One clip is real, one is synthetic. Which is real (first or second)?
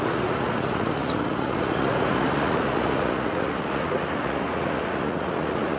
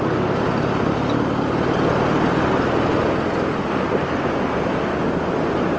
second